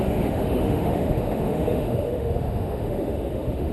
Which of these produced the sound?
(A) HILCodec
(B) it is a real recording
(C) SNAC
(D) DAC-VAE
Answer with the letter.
D